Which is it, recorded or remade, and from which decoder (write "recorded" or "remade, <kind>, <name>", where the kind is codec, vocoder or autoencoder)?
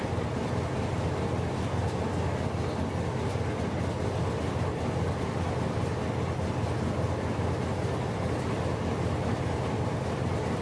recorded